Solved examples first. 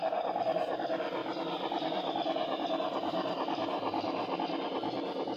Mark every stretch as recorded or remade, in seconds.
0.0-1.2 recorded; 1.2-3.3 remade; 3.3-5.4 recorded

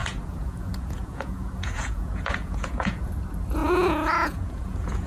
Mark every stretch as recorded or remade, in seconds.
0.0-3.1 remade; 3.1-3.6 recorded; 3.6-5.1 remade

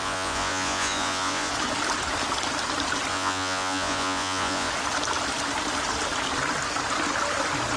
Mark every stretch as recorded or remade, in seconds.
0.0-1.5 remade; 1.5-3.1 recorded; 3.1-4.7 remade; 4.7-7.8 recorded

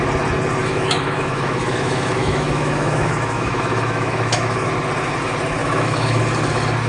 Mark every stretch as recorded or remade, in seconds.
0.0-0.6 recorded; 0.6-4.7 remade; 4.7-5.6 recorded; 5.6-6.2 remade; 6.2-6.9 recorded